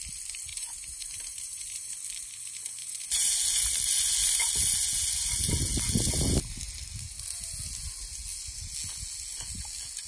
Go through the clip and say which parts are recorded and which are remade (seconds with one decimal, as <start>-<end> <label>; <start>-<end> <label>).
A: 0.0-0.5 recorded; 0.5-1.9 remade; 1.9-2.8 recorded; 2.8-3.3 remade; 3.3-10.1 recorded